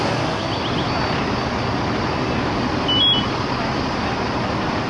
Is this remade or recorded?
recorded